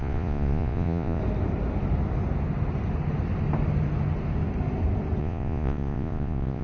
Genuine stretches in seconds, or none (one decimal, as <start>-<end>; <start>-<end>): 1.2-5.2

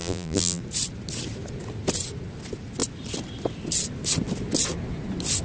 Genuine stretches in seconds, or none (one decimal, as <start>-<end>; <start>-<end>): 0.6-5.4

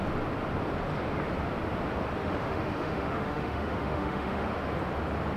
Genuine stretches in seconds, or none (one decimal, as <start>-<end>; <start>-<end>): 0.0-2.2; 4.5-5.4

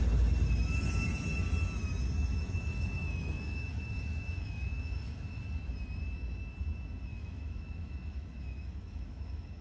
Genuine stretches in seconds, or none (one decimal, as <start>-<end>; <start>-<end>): 0.0-2.3; 5.4-7.1